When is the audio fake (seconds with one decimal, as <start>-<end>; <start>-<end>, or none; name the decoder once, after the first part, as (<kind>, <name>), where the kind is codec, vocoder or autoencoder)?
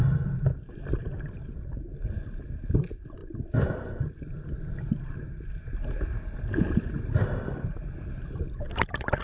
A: 1.9-2.4 (vocoder, BigVGAN v2)